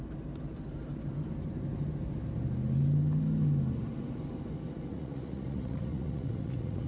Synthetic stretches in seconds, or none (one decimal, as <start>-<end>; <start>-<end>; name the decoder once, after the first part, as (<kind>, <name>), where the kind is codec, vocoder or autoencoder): 4.9-6.9 (vocoder, Vocos)